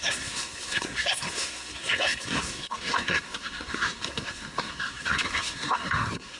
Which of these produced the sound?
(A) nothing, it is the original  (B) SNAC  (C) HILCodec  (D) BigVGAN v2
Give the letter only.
B